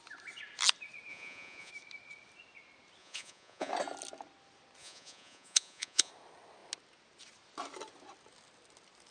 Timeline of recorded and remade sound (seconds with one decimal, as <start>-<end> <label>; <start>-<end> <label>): 0.0-1.1 recorded; 1.1-1.7 remade; 1.7-3.0 recorded; 3.0-3.7 remade; 3.7-4.8 recorded; 4.8-6.1 remade; 6.1-9.1 recorded